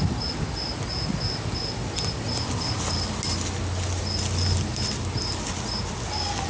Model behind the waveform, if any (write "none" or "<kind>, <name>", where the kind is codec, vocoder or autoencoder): none